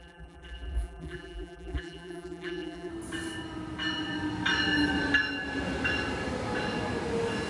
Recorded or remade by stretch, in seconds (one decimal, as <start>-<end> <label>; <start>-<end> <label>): 0.0-2.9 remade; 2.9-7.5 recorded